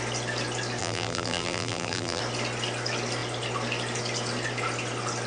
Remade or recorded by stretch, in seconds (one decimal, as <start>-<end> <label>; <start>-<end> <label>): 0.0-0.8 recorded; 0.8-2.2 remade; 2.2-5.3 recorded